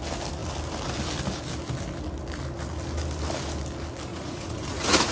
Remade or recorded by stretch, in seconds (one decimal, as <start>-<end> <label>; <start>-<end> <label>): 0.0-4.1 recorded; 4.1-5.1 remade